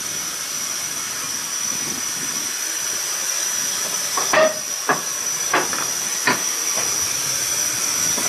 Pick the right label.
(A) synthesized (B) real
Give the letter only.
B